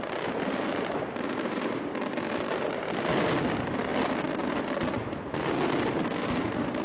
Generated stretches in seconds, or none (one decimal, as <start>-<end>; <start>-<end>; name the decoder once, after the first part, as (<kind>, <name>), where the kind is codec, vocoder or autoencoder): none